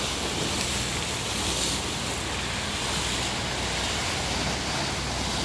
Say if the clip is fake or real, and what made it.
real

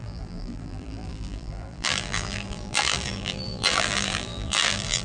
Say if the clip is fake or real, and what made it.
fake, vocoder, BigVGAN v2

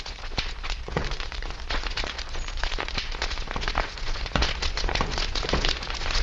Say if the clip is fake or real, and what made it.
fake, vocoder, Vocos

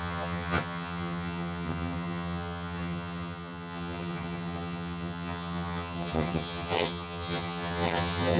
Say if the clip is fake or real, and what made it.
fake, vocoder, HiFi-GAN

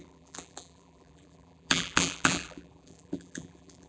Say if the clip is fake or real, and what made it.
fake, vocoder, BigVGAN v2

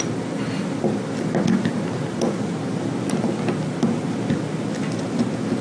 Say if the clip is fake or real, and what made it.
real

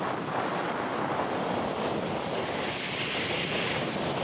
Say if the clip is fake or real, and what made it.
real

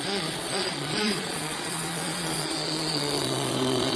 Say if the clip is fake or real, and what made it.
fake, vocoder, Vocos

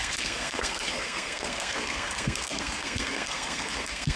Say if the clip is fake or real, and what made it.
fake, codec, SNAC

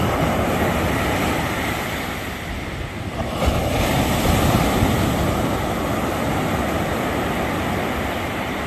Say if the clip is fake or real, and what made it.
real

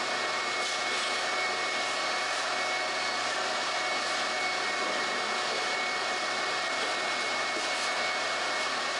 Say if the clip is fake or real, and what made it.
real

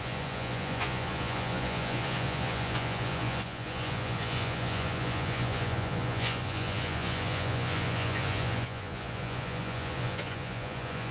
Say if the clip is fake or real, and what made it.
fake, vocoder, Vocos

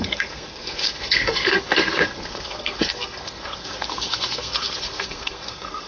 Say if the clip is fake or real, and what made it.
fake, codec, SNAC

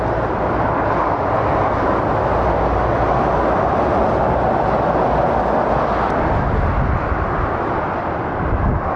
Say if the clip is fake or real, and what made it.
real